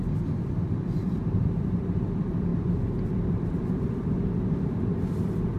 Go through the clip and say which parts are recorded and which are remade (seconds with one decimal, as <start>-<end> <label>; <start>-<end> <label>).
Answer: 0.0-5.6 remade